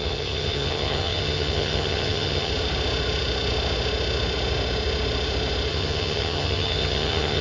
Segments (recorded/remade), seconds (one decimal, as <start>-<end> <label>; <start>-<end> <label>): 0.0-2.5 remade; 2.5-5.7 recorded; 5.7-7.4 remade